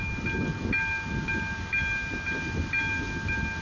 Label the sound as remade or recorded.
recorded